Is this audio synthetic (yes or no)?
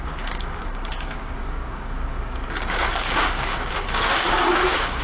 yes